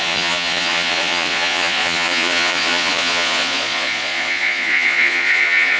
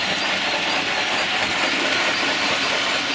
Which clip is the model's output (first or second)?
first